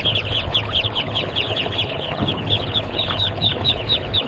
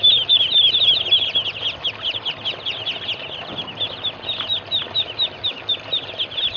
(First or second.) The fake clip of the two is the first